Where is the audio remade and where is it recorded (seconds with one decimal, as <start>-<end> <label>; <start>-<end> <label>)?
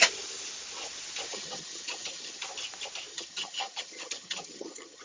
0.0-1.3 recorded; 1.3-2.4 remade; 2.4-3.1 recorded; 3.1-5.0 remade